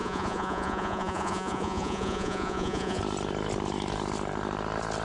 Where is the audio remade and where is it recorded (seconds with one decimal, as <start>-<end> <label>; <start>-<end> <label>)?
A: 0.0-3.0 remade; 3.0-5.0 recorded